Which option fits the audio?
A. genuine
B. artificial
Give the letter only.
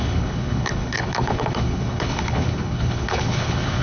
B